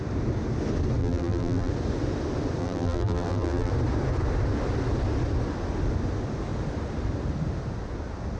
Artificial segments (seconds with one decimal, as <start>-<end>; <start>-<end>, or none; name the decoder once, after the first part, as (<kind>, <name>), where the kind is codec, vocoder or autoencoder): 1.0-1.7 (vocoder, BigVGAN v2); 2.6-3.7